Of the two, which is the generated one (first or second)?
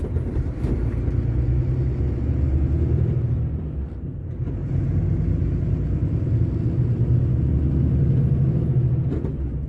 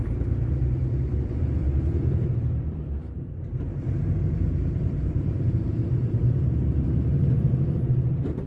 second